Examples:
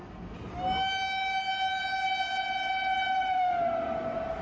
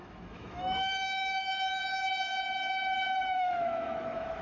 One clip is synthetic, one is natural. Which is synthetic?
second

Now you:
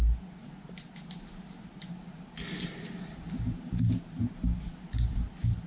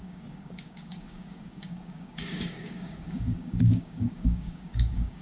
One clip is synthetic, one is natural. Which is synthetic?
second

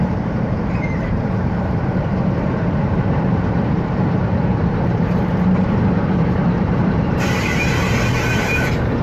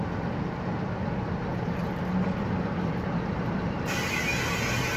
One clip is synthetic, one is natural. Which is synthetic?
first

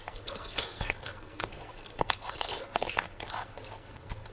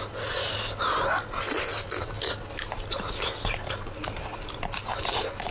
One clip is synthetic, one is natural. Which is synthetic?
first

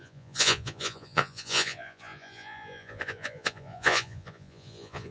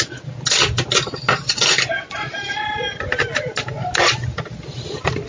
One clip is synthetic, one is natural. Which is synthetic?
first